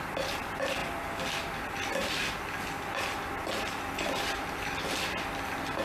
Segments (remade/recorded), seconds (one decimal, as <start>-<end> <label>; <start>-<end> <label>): 0.0-5.8 recorded